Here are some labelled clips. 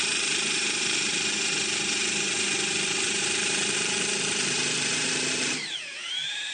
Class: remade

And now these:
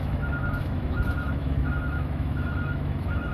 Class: remade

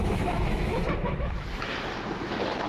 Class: remade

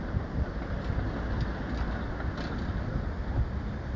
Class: recorded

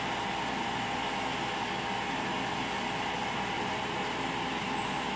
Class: recorded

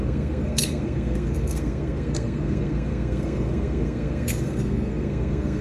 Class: remade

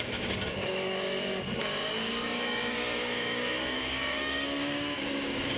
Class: remade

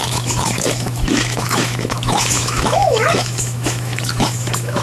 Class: remade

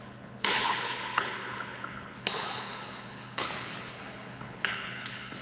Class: remade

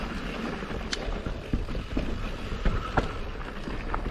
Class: remade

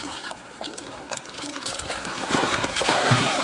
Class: remade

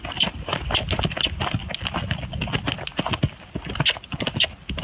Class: recorded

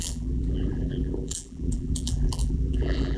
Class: remade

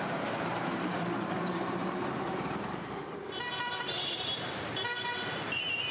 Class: remade